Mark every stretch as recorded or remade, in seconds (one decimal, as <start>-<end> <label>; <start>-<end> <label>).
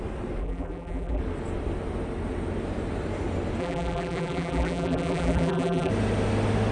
0.0-0.4 recorded; 0.4-1.2 remade; 1.2-3.6 recorded; 3.6-5.9 remade; 5.9-6.7 recorded